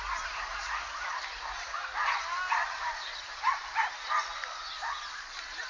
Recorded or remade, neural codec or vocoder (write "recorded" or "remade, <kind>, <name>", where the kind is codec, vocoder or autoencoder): recorded